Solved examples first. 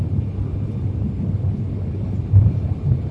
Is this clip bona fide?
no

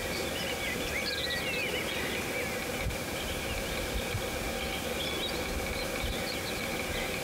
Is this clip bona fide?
yes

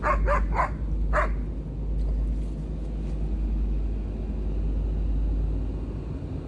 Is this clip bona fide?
yes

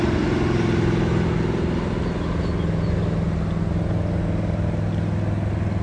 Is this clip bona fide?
yes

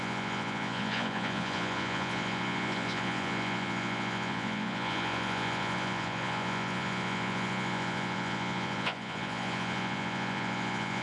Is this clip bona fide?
no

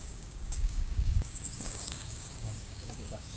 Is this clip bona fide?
no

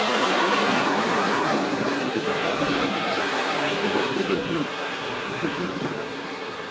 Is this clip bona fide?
no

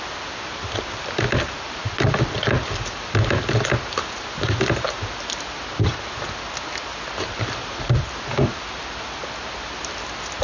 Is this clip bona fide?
yes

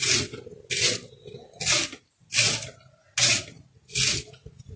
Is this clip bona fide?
yes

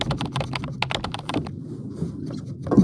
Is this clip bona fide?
yes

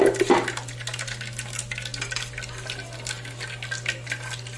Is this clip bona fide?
yes